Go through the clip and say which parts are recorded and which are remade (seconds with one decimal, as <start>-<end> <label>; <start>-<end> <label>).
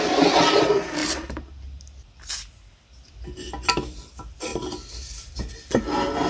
0.0-6.3 recorded